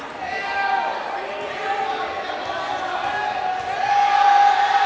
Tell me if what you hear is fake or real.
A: real